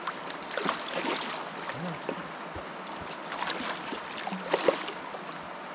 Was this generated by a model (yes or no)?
no